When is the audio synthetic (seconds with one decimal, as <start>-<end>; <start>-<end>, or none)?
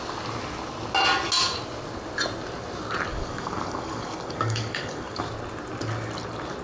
3.1-5.2